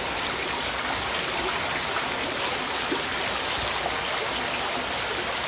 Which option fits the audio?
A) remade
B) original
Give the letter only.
B